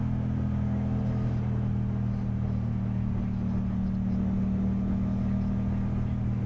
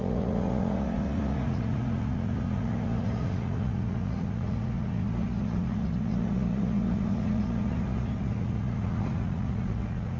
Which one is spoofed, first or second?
second